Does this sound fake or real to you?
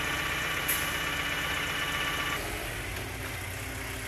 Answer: real